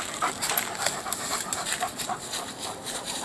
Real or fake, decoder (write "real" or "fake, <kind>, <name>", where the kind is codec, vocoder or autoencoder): fake, vocoder, BigVGAN v2